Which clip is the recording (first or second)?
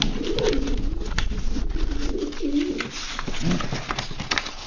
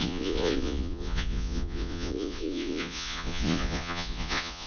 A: first